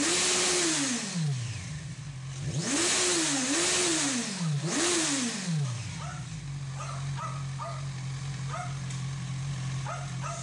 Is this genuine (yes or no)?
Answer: yes